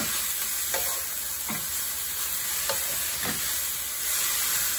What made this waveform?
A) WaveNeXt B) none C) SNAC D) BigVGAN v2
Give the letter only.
B